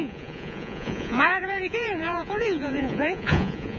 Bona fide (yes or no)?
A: no